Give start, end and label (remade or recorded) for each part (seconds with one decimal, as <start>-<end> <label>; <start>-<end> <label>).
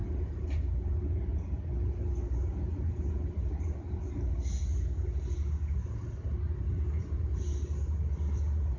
0.0-8.8 recorded